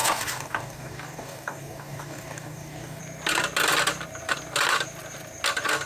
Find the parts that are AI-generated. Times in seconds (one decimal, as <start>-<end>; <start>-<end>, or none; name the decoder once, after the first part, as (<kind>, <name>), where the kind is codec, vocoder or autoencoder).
0.0-3.0 (codec, DAC)